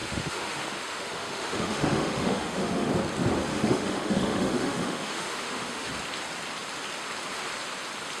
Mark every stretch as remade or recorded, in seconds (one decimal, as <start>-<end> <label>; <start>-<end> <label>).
0.0-2.9 remade; 2.9-3.5 recorded; 3.5-5.9 remade; 5.9-8.2 recorded